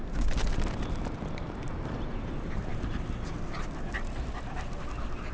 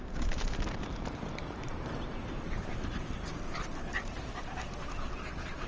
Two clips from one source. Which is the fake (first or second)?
second